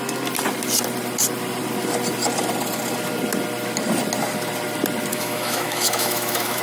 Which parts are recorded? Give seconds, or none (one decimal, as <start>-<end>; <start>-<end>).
0.0-5.1